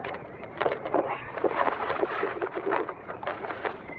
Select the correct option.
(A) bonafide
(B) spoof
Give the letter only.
B